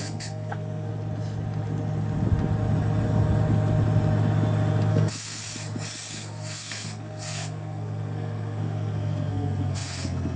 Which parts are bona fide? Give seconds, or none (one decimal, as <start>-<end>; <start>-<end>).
0.9-4.9; 5.4-6.1